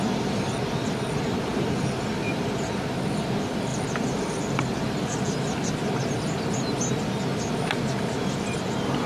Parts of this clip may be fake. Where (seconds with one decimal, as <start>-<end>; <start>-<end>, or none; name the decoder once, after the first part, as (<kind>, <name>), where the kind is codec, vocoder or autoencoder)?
none